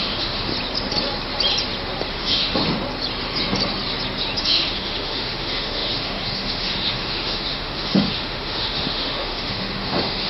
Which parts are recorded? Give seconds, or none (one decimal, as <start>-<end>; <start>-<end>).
0.5-2.1; 2.6-4.4